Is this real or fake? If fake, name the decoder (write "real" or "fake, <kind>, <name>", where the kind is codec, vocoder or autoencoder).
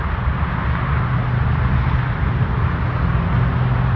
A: real